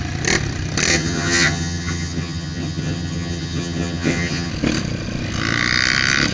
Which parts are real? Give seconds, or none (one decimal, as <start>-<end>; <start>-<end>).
0.0-0.9; 4.5-6.3